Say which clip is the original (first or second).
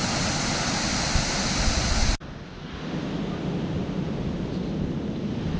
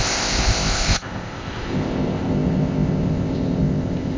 first